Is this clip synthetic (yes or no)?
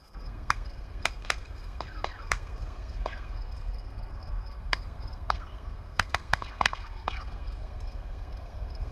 yes